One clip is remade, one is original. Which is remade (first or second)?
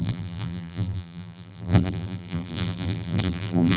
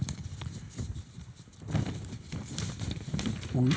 first